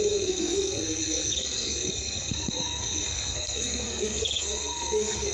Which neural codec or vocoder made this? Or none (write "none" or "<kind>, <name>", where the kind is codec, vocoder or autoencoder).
codec, SNAC